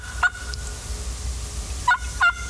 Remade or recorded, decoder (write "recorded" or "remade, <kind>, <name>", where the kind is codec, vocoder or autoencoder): recorded